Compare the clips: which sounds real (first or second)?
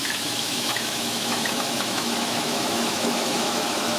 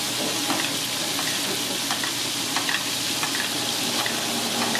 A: second